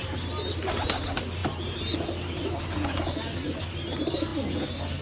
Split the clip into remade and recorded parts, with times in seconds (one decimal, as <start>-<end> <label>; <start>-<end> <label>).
0.0-5.0 recorded